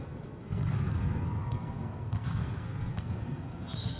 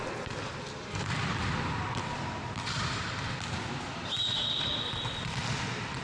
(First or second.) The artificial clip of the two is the first